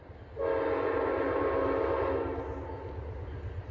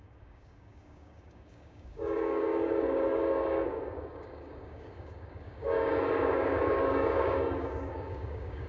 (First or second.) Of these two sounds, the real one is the first